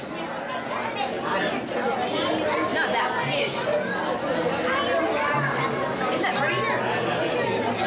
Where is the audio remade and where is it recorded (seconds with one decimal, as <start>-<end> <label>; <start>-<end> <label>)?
0.0-7.9 recorded